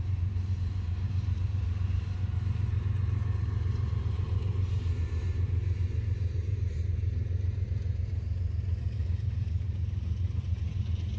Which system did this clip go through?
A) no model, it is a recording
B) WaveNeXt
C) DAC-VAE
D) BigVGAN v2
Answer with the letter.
D